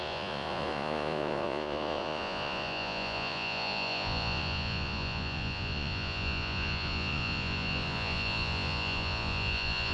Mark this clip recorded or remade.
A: remade